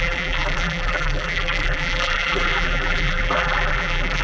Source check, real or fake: fake